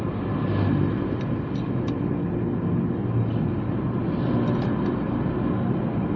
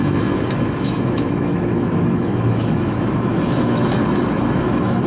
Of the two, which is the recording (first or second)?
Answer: first